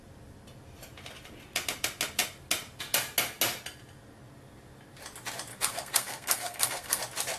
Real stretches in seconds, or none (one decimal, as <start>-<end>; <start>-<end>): 0.0-5.5; 7.0-7.4